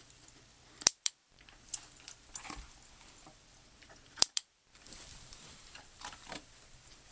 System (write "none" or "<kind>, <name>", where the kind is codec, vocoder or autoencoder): vocoder, BigVGAN v2